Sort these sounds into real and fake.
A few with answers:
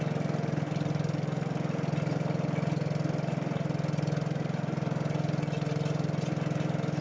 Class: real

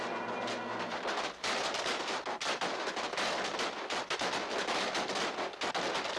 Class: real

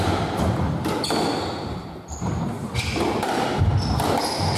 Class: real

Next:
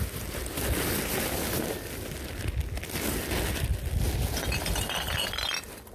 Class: real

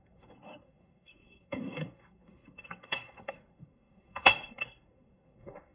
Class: fake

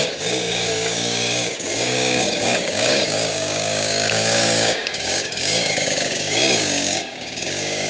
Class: fake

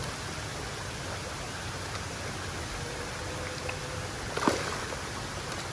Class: real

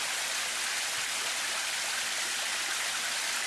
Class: real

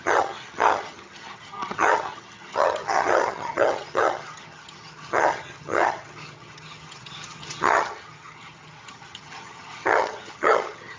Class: fake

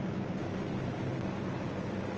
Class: fake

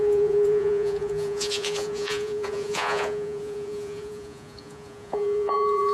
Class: fake